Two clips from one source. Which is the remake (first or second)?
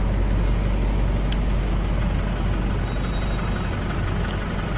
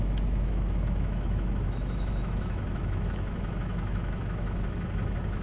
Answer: second